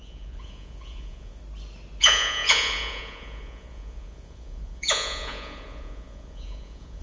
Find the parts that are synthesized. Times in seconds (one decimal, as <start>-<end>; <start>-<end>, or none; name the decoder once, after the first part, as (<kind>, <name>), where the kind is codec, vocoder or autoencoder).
0.0-1.4 (vocoder, Vocos); 2.0-7.0